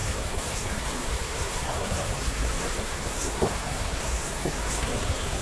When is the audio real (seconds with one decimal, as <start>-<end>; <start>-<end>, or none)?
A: none